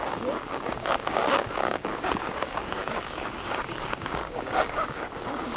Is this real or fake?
fake